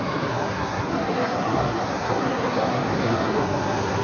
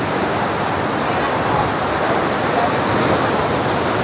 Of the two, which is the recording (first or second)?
second